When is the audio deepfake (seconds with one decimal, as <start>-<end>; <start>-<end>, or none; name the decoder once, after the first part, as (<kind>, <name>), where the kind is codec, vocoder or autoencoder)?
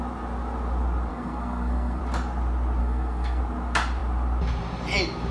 1.1-2.0 (codec, SNAC); 2.8-3.4